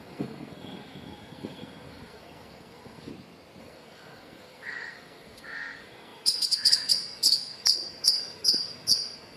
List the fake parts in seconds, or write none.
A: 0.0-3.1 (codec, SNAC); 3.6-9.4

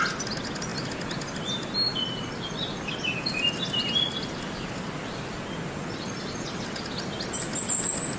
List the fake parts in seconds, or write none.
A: none

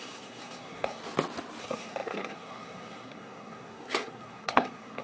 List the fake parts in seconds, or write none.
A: 0.0-1.0 (codec, SNAC); 1.6-5.0

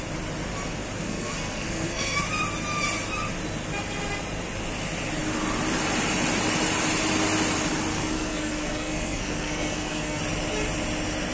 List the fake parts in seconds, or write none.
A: 1.0-2.2 (codec, SNAC); 7.9-10.2

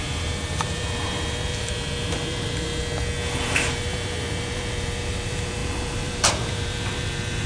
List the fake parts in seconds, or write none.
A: 0.0-2.7 (vocoder, BigVGAN v2); 3.4-7.5

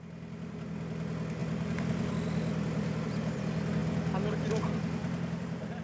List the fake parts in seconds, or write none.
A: 1.4-2.1 (vocoder, BigVGAN v2); 5.0-5.8